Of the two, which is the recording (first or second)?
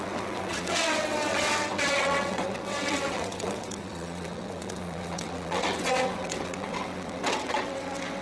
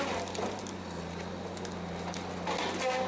second